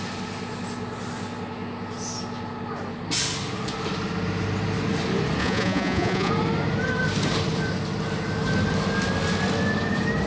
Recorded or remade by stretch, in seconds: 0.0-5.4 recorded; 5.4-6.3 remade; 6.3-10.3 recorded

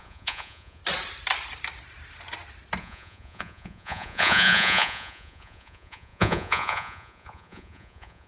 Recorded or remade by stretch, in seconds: 0.0-0.8 remade; 0.8-2.8 recorded; 2.8-8.3 remade

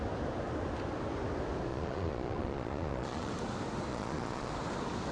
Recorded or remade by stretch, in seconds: 0.0-1.7 recorded; 1.7-3.3 remade; 3.3-3.9 recorded; 3.9-4.5 remade; 4.5-5.1 recorded

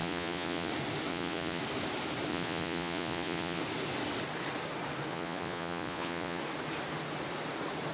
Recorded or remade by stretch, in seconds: 0.0-0.7 remade; 0.7-1.1 recorded; 1.1-1.6 remade; 1.6-2.3 recorded; 2.3-3.6 remade; 3.6-5.1 recorded; 5.1-6.4 remade; 6.4-7.9 recorded

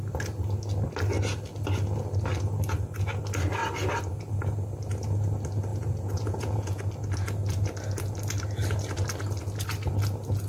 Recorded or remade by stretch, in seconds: 0.0-5.7 recorded; 5.7-6.8 remade; 6.8-10.5 recorded

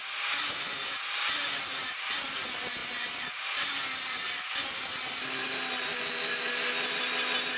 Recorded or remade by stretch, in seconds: 0.0-7.6 recorded

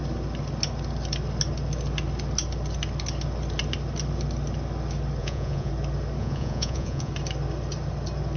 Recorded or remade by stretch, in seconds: 0.0-5.2 recorded; 5.2-5.7 remade; 5.7-6.2 recorded; 6.2-7.1 remade; 7.1-8.4 recorded